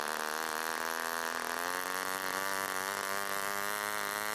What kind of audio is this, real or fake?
real